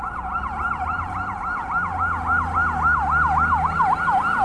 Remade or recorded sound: recorded